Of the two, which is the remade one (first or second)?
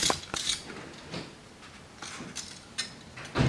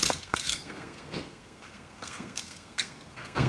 second